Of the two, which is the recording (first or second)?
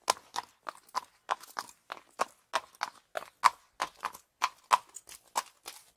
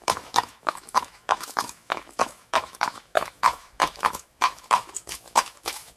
first